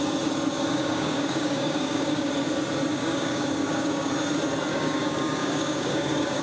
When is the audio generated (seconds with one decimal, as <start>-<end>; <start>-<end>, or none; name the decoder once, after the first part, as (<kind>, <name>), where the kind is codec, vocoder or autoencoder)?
0.7-2.3 (codec, DAC); 2.9-4.1; 4.7-6.4